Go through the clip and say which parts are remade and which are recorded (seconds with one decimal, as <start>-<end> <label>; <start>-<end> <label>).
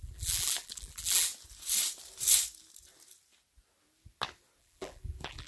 0.0-1.3 remade; 1.3-4.6 recorded; 4.6-5.5 remade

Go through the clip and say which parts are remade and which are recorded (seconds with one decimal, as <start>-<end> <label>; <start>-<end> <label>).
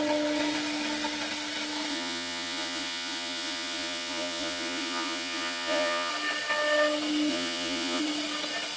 0.0-1.9 recorded; 1.9-6.1 remade; 6.1-7.3 recorded; 7.3-8.0 remade; 8.0-8.8 recorded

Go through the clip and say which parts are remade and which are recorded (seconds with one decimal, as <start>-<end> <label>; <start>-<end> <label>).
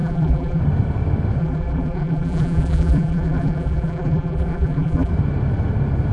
0.0-0.6 remade; 0.6-1.4 recorded; 1.4-5.1 remade; 5.1-6.1 recorded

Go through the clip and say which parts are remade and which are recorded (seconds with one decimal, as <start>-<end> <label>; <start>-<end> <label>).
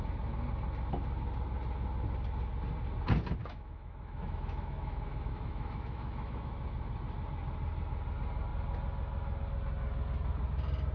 0.0-3.4 recorded; 3.4-6.5 remade; 6.5-10.9 recorded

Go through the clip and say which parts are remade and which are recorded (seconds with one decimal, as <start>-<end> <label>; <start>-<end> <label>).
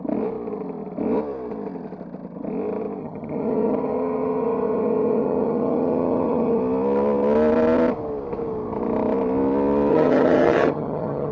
0.0-3.0 recorded; 3.0-6.6 remade; 6.6-9.9 recorded; 9.9-11.3 remade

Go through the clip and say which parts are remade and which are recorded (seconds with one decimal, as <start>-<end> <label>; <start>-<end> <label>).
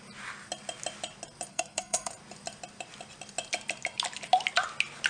0.0-1.5 recorded; 1.5-2.1 remade; 2.1-5.1 recorded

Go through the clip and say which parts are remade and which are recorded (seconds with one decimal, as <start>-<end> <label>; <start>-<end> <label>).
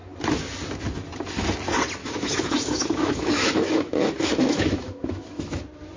0.0-2.0 recorded; 2.0-5.6 remade; 5.6-6.0 recorded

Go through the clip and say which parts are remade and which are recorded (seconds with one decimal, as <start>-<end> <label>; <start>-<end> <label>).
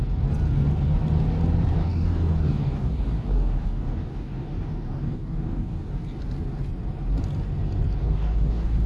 0.0-1.8 recorded; 1.8-6.0 remade; 6.0-8.0 recorded; 8.0-8.9 remade